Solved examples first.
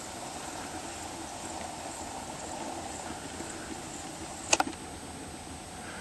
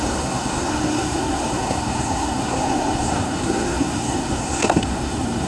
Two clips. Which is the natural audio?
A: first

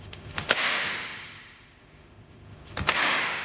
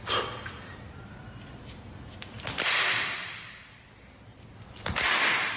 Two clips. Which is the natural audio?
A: second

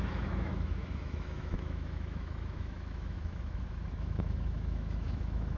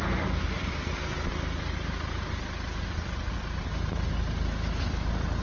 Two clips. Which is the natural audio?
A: second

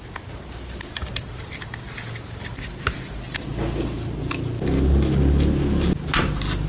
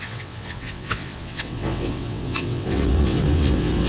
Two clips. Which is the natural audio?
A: first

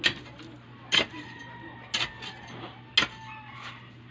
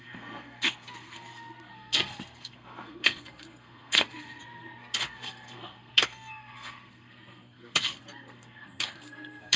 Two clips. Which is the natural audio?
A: first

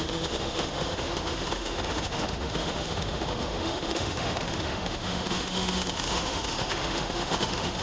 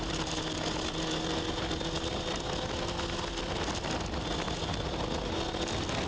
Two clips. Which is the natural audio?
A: second